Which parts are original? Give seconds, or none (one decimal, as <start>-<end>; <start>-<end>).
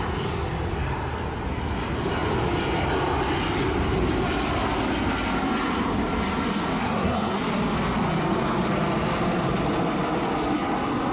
0.0-6.8; 7.4-11.1